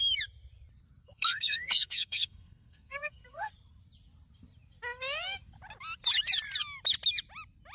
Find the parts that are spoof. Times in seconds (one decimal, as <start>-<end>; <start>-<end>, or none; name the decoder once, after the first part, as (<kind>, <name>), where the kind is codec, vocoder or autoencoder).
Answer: 1.0-3.5 (codec, SNAC)